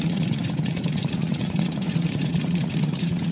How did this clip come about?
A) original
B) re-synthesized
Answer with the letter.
B